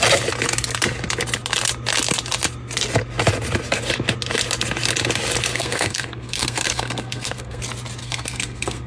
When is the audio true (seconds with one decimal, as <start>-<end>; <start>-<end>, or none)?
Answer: 0.0-5.5; 7.6-8.0